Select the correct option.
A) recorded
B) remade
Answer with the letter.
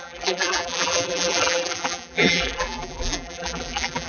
B